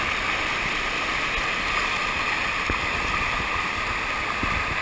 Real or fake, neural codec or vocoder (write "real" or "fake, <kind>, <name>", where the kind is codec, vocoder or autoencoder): real